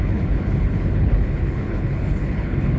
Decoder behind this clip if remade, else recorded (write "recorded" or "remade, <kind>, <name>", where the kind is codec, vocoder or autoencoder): remade, codec, HILCodec